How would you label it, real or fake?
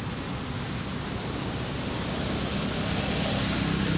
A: real